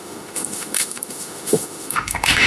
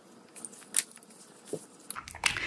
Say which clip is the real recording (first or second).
second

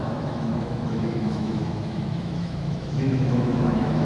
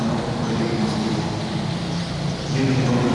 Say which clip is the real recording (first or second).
second